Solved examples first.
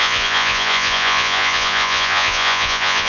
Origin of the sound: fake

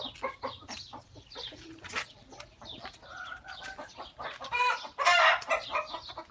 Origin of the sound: real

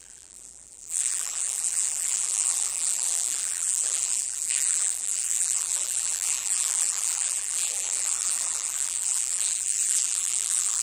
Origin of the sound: fake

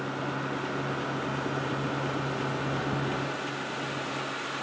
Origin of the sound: real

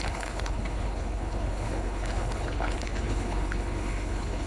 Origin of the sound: fake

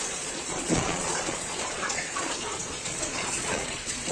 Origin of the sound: fake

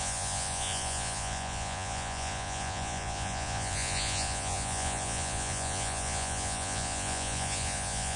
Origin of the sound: fake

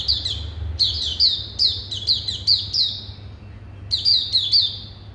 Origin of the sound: real